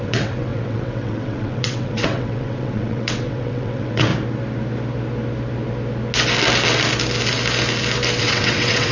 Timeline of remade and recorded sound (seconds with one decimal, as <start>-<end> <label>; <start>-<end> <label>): 0.0-4.1 remade; 4.1-8.2 recorded; 8.2-8.9 remade